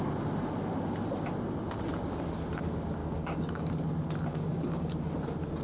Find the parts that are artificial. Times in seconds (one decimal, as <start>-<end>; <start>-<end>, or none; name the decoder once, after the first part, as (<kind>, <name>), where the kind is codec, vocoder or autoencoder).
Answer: 3.0-3.7 (codec, DAC); 4.3-4.9